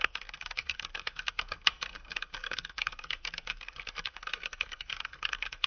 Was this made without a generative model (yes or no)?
no